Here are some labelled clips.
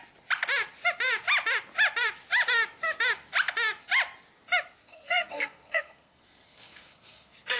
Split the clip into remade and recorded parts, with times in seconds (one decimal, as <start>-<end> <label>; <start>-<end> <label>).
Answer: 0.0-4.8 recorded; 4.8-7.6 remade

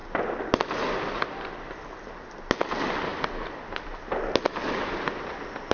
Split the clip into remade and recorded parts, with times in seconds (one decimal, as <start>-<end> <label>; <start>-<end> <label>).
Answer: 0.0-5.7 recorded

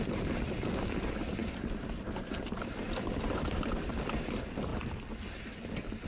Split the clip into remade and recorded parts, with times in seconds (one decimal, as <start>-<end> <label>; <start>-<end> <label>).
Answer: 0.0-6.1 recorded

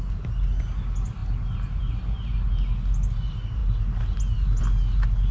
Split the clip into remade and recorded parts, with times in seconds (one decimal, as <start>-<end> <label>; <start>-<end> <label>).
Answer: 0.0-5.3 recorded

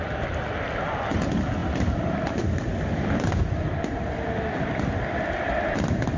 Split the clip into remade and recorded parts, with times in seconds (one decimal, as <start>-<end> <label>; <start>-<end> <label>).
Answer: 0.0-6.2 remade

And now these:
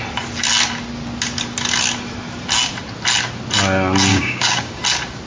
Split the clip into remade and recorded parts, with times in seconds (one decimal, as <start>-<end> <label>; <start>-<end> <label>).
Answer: 0.0-4.1 recorded; 4.1-4.8 remade; 4.8-5.3 recorded